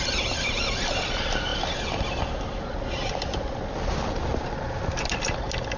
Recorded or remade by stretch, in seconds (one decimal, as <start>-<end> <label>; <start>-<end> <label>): 0.0-5.8 recorded